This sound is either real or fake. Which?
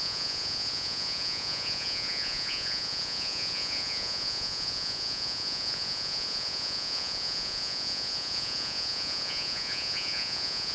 fake